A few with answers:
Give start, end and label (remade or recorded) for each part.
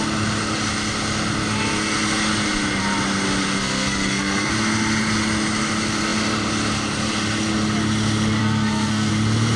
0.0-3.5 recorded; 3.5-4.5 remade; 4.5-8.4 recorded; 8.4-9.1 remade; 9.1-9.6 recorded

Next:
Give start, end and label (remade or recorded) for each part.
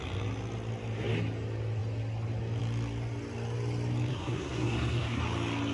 0.0-4.1 recorded; 4.1-5.2 remade; 5.2-5.7 recorded